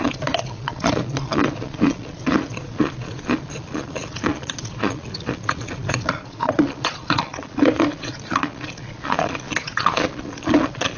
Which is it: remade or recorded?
remade